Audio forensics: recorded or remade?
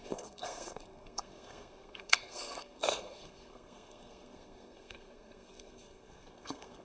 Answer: remade